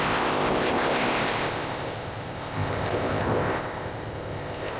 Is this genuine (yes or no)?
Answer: no